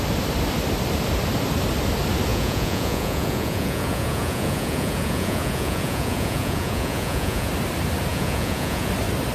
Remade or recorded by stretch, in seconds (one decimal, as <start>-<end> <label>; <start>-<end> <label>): 0.0-2.3 recorded; 2.3-7.5 remade; 7.5-8.1 recorded; 8.1-8.9 remade; 8.9-9.3 recorded